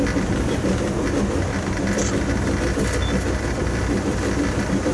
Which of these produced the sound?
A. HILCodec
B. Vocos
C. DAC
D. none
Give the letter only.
D